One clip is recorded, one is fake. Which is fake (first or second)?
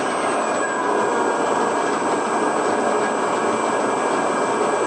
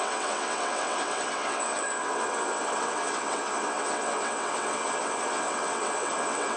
second